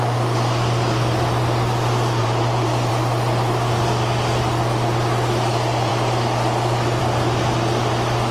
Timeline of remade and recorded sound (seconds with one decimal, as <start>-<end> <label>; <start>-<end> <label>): 0.0-2.2 recorded; 2.2-2.9 remade; 2.9-8.3 recorded